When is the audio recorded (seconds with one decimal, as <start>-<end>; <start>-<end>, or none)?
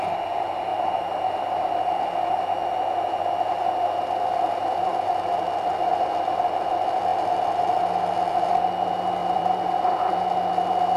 0.0-0.7; 1.7-9.2; 9.8-11.0